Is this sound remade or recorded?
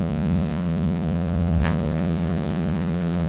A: remade